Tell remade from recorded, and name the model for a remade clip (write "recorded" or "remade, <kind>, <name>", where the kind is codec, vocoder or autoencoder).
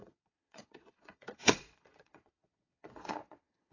remade, vocoder, Vocos